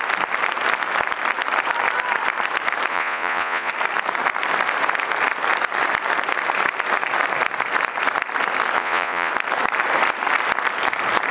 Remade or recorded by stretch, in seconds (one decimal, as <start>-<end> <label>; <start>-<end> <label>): 0.0-2.9 recorded; 2.9-3.7 remade; 3.7-8.8 recorded; 8.8-9.3 remade; 9.3-11.3 recorded